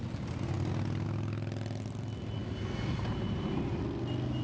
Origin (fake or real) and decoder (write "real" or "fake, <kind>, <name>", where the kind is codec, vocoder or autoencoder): real